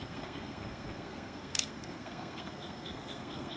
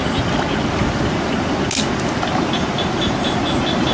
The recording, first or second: second